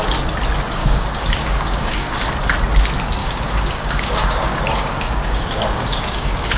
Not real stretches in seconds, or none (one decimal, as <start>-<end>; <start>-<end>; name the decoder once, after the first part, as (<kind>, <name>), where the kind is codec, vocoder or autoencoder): 0.8-2.2 (codec, DAC); 3.2-6.6